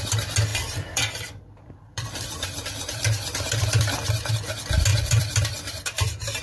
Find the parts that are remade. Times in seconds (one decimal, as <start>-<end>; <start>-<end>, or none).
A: 0.5-4.3; 4.9-6.0